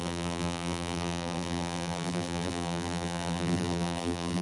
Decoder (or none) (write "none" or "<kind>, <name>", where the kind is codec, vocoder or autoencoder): vocoder, BigVGAN v2